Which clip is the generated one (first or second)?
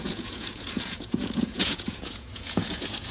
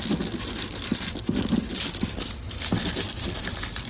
first